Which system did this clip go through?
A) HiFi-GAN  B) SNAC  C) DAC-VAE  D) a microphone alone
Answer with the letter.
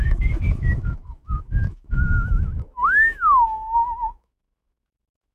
C